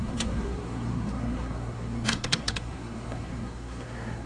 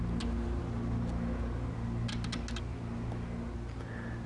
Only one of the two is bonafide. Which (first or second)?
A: second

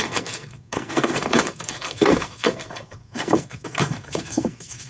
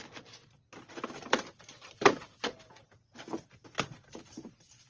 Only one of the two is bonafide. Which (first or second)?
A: second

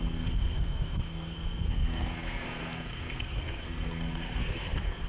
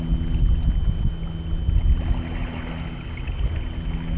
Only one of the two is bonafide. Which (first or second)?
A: second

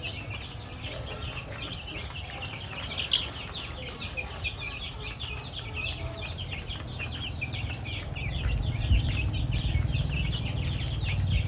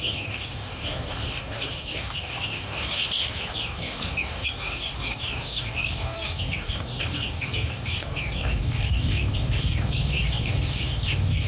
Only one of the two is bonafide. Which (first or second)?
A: first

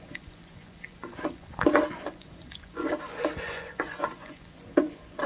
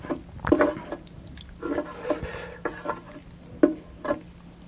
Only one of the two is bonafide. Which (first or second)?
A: second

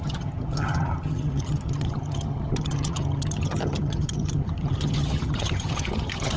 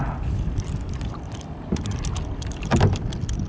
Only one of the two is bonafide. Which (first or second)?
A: second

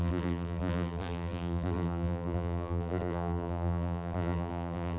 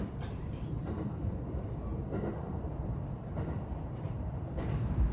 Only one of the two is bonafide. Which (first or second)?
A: second